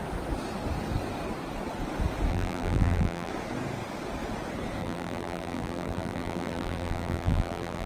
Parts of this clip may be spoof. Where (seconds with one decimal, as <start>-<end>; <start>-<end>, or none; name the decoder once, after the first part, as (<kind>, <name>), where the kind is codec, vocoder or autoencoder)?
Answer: 2.3-3.3 (vocoder, BigVGAN v2); 4.8-7.9